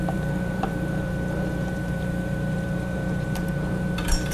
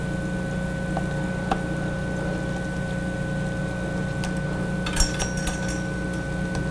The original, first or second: second